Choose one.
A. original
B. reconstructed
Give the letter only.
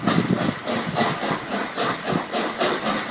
A